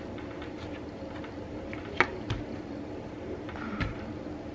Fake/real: real